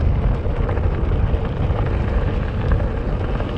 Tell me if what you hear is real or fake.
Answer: real